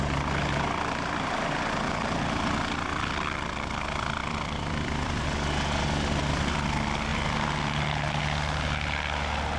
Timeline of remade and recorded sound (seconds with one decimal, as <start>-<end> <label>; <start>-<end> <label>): 0.0-4.2 recorded; 4.2-5.2 remade; 5.2-7.1 recorded; 7.1-8.2 remade; 8.2-9.6 recorded